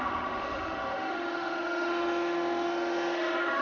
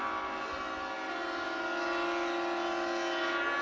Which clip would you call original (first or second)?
second